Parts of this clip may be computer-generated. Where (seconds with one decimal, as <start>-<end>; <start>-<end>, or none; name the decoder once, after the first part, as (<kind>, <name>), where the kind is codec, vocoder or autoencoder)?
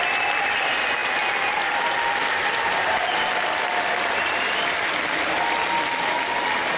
none